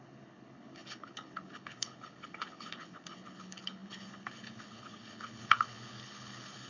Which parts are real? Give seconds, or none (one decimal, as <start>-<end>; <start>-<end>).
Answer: none